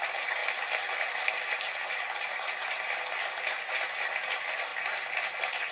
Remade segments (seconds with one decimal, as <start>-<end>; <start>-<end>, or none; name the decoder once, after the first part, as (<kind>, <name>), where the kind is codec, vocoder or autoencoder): none